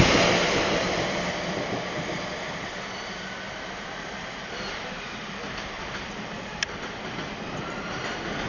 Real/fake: real